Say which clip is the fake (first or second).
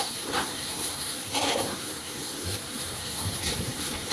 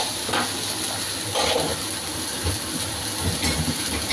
first